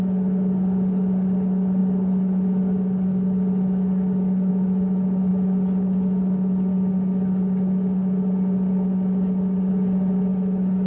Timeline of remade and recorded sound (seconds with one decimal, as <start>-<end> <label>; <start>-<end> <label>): 0.0-10.9 recorded